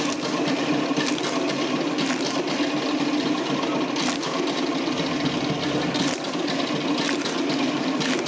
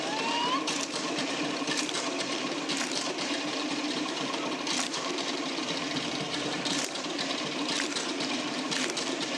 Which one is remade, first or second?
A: second